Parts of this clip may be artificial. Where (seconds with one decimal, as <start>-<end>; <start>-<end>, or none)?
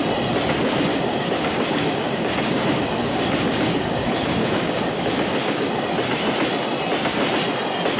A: 0.9-5.7